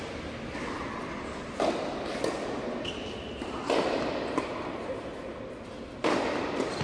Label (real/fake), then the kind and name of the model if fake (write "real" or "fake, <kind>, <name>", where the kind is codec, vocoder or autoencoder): real